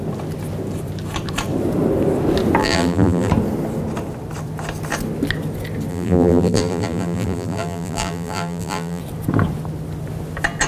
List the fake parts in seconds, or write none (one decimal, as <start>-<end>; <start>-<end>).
2.6-3.3; 5.9-9.0